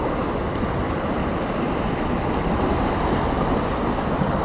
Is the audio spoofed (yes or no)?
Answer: no